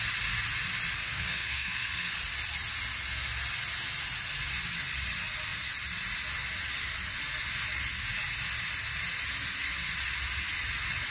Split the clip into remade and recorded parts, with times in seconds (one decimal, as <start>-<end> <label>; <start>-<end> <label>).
0.0-1.0 recorded; 1.0-2.1 remade; 2.1-11.1 recorded

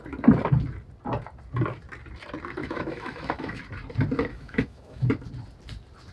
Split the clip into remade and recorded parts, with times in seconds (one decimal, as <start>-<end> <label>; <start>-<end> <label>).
0.0-2.6 recorded; 2.6-3.6 remade; 3.6-4.3 recorded; 4.3-5.1 remade; 5.1-6.1 recorded

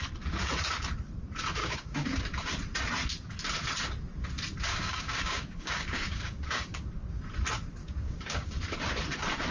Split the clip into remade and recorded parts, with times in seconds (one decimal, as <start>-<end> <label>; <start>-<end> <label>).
0.0-1.6 recorded; 1.6-2.2 remade; 2.2-4.7 recorded; 4.7-7.2 remade; 7.2-7.8 recorded; 7.8-8.5 remade; 8.5-9.5 recorded

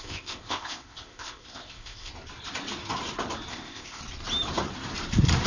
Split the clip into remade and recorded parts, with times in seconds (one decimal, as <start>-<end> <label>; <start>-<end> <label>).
0.0-2.1 remade; 2.1-3.5 recorded; 3.5-4.0 remade; 4.0-5.5 recorded

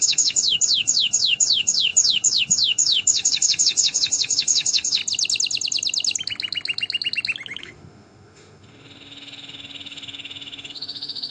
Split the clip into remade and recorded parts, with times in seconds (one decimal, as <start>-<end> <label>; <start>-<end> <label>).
0.0-5.0 remade; 5.0-7.6 recorded; 7.6-11.3 remade

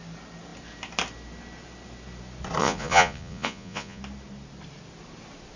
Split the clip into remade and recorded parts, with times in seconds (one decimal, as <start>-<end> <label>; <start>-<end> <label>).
0.0-2.6 recorded; 2.6-4.0 remade; 4.0-5.6 recorded